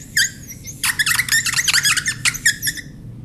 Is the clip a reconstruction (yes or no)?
no